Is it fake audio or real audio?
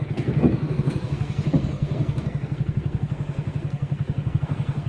fake